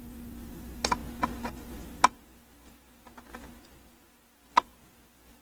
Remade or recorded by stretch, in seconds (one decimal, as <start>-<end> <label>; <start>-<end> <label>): 0.0-5.4 recorded